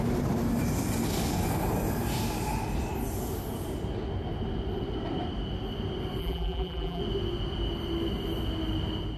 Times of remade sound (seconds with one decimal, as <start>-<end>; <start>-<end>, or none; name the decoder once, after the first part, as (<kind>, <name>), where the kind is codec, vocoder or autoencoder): 6.2-7.0 (vocoder, BigVGAN v2)